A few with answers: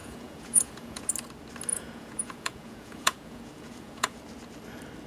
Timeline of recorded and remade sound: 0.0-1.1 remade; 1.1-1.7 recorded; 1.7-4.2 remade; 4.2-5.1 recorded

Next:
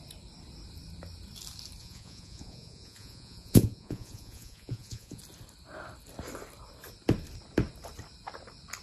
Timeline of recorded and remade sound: 0.0-1.8 recorded; 1.8-5.2 remade; 5.2-8.8 recorded

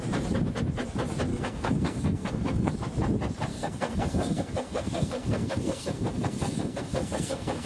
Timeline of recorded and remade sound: 0.0-1.3 recorded; 1.3-2.7 remade; 2.7-3.5 recorded; 3.5-7.7 remade

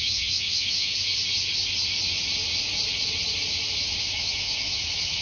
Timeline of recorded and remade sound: 0.0-0.9 remade; 0.9-4.0 recorded; 4.0-5.2 remade

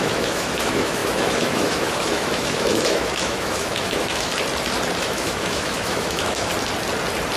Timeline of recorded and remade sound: 0.0-4.3 remade; 4.3-5.0 recorded; 5.0-6.5 remade; 6.5-7.4 recorded